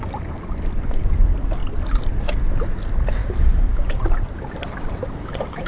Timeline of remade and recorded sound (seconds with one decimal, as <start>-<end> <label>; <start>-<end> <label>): 0.0-3.2 recorded; 3.2-5.7 remade